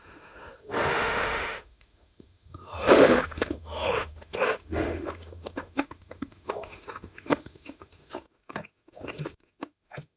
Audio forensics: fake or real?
fake